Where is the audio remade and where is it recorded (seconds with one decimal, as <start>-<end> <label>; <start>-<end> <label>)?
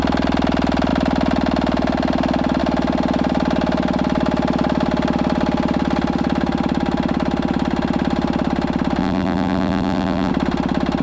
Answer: 0.0-9.0 recorded; 9.0-10.3 remade; 10.3-11.0 recorded